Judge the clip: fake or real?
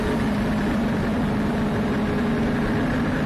real